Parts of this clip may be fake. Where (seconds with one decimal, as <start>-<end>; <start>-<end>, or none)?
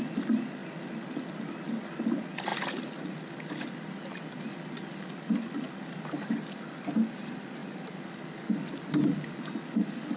none